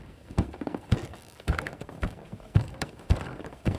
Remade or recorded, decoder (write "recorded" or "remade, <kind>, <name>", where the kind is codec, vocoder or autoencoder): remade, codec, SNAC